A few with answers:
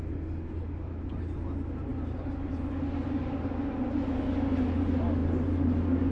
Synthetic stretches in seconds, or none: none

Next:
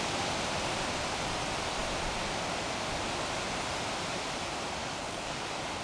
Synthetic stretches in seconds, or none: 4.8-5.8 (codec, DAC)

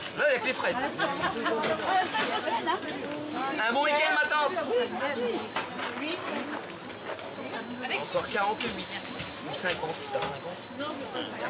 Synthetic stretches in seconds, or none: none